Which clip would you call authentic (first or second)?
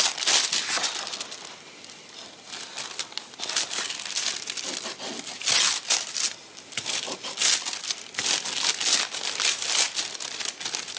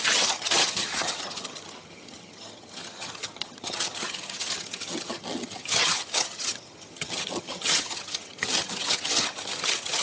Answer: first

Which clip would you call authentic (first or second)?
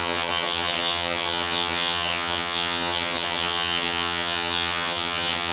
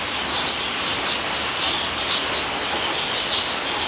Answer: second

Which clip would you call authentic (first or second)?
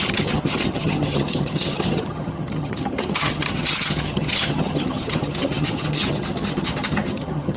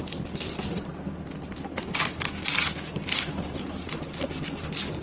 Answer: second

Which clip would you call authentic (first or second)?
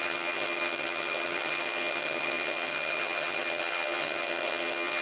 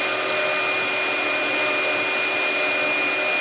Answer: second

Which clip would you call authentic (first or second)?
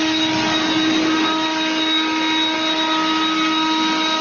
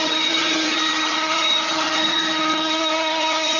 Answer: first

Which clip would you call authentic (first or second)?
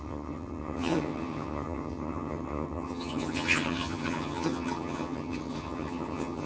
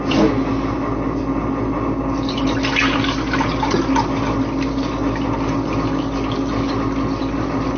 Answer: second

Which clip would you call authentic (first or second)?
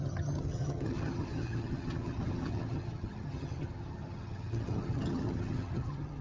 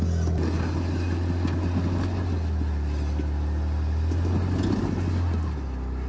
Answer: second